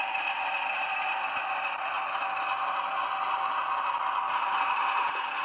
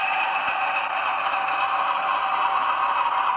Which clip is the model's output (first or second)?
second